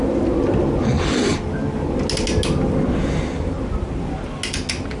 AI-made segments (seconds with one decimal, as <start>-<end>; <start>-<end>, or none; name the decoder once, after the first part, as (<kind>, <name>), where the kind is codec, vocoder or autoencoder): none